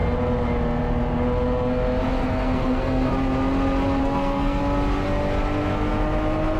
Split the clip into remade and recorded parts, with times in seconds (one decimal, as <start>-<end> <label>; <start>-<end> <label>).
0.0-2.2 recorded; 2.2-3.1 remade; 3.1-4.0 recorded; 4.0-4.6 remade; 4.6-6.6 recorded